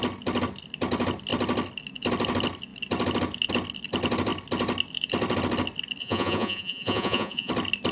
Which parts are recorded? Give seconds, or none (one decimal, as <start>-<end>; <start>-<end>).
0.0-6.0; 7.5-7.9